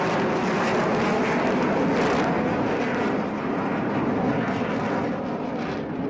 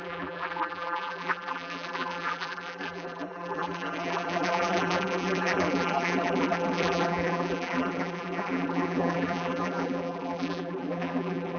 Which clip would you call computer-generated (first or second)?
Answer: second